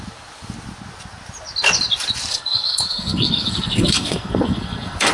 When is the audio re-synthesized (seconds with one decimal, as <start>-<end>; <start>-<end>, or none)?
2.3-5.1